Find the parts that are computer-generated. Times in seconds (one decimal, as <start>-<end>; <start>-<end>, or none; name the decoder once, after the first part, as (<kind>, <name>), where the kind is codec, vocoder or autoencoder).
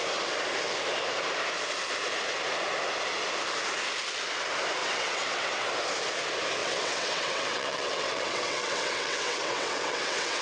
4.8-5.7 (vocoder, WaveNeXt); 6.6-10.4